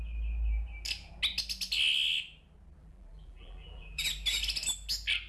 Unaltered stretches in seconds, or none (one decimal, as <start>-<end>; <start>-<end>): 0.0-2.8; 4.1-5.3